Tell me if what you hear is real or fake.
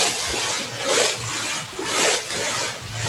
real